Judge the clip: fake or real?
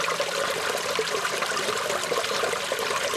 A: real